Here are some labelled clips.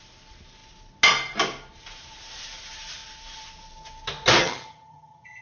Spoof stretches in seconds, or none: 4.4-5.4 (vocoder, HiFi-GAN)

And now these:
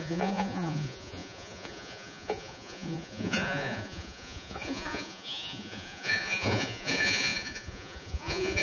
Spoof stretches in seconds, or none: 0.0-8.6 (vocoder, Vocos)

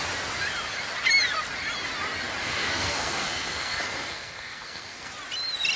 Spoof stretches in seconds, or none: 2.4-5.1 (codec, SNAC)

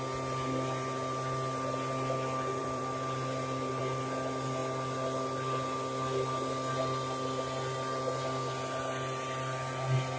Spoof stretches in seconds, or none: 2.6-3.8 (vocoder, BigVGAN v2)

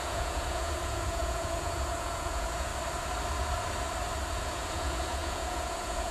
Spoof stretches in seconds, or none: 0.0-2.7 (vocoder, Vocos); 4.3-6.1

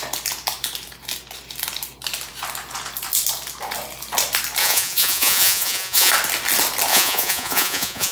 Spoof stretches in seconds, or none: 4.6-6.1 (vocoder, Vocos); 6.9-8.1